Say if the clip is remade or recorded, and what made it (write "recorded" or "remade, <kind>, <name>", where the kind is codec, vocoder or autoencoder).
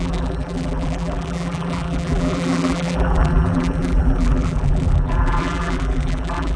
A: remade, vocoder, BigVGAN v2